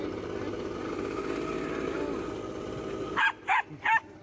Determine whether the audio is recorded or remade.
recorded